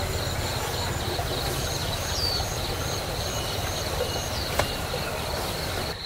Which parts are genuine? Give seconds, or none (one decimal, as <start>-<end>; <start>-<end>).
0.0-1.8; 4.6-6.1